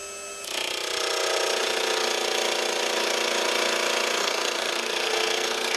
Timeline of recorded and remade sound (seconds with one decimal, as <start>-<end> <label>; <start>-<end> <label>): 0.0-4.2 recorded; 4.2-5.8 remade